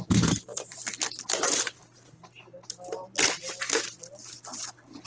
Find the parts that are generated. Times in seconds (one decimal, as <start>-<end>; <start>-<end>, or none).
none